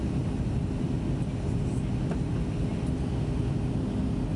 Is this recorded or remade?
recorded